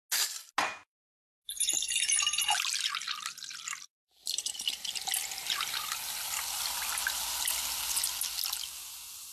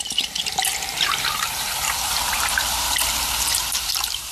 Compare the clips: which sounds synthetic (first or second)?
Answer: second